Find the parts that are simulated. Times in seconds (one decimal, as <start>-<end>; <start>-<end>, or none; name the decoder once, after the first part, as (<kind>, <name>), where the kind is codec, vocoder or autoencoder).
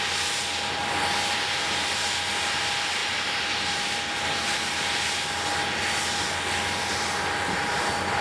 none